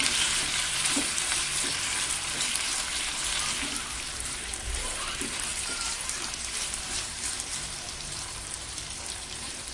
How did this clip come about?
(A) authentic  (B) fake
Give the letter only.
B